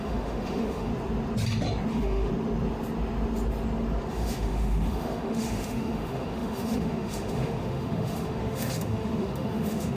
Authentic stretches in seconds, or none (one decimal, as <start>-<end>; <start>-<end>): 0.9-1.9; 2.3-4.1